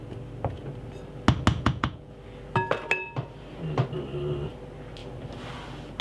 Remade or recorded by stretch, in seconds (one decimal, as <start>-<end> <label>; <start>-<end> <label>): 0.0-1.5 recorded; 1.5-2.1 remade; 2.1-6.0 recorded